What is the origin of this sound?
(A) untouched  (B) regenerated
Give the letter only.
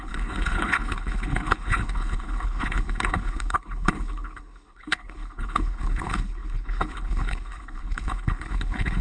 B